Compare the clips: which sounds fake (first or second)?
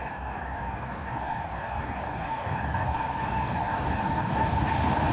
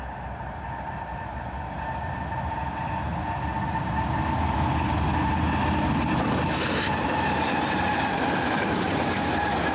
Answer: first